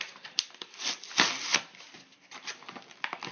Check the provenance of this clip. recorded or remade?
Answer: recorded